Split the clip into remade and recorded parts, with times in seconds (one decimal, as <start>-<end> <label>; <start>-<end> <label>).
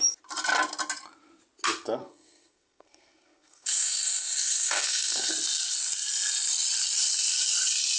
0.0-2.0 recorded; 2.0-5.3 remade; 5.3-8.0 recorded